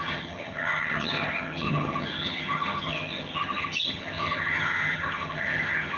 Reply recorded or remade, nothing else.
remade